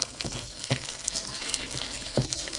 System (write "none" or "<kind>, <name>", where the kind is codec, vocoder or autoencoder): codec, SNAC